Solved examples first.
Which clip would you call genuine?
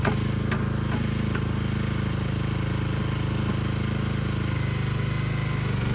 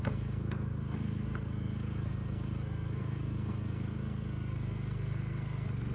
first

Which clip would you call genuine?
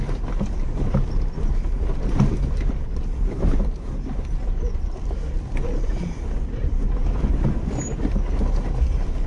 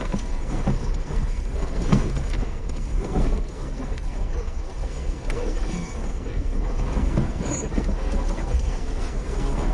first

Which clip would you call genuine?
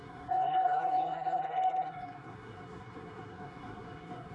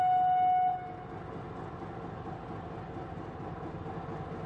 second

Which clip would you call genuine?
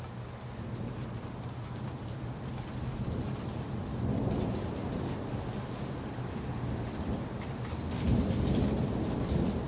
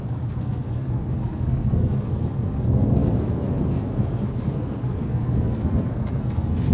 first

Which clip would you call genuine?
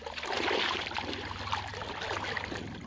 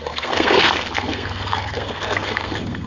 first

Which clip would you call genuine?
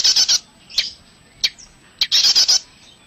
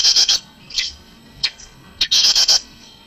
first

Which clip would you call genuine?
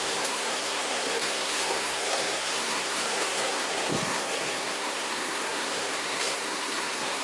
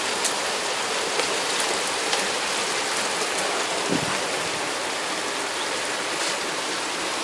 second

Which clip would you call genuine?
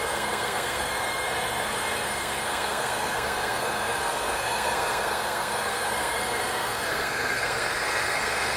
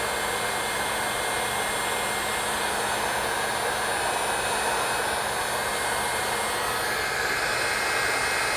second